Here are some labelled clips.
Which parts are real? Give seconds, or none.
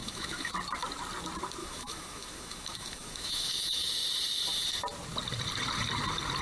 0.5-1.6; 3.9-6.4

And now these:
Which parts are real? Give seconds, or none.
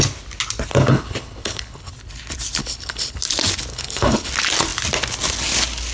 0.0-0.7; 1.9-2.6; 3.2-3.7; 4.3-5.9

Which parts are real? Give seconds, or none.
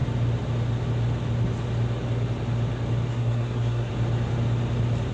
0.0-3.1; 3.9-5.1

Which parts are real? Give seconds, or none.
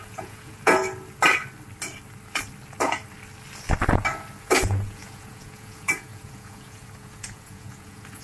0.8-4.4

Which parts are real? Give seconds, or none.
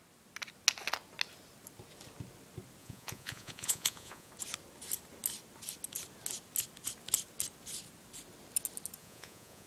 0.0-2.8; 4.3-9.0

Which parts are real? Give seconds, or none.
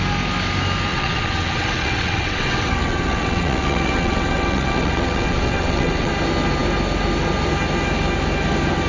0.0-0.9; 6.1-8.9